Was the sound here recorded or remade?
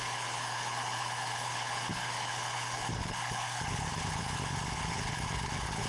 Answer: remade